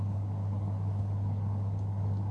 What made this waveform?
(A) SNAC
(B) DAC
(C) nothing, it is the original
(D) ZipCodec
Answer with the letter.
B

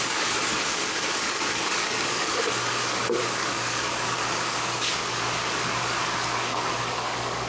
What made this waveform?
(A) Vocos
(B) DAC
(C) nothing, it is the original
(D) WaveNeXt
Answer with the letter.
B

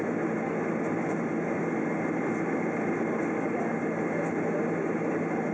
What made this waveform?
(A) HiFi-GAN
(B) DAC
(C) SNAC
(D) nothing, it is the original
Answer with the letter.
D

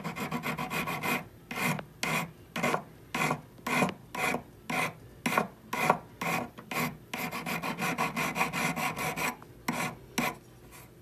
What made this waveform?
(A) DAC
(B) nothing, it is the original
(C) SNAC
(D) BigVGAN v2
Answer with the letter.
B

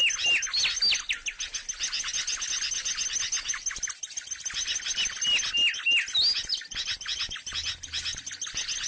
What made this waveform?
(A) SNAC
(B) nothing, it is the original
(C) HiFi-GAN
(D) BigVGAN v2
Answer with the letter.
B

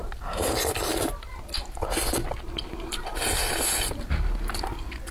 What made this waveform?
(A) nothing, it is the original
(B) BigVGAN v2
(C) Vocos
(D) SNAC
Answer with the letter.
A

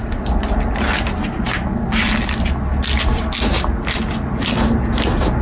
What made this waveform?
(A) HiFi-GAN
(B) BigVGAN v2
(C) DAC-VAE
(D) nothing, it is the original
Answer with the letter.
D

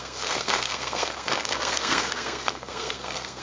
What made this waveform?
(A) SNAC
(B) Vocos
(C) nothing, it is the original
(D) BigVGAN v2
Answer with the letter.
A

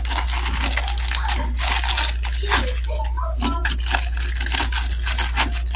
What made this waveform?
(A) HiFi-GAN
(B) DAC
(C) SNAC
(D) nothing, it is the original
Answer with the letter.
D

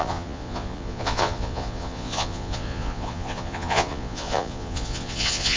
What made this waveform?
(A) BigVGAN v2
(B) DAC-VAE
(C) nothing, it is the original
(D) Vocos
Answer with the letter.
D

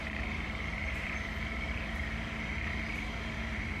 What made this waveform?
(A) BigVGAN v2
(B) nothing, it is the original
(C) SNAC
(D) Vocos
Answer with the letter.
A